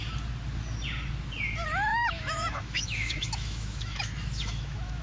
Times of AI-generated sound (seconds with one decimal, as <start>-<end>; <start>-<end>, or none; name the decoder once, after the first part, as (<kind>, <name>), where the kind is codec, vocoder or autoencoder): 1.9-5.0 (autoencoder, DAC-VAE)